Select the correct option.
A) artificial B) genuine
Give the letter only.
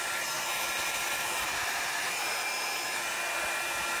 B